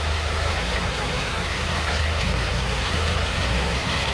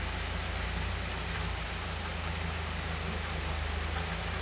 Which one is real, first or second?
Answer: second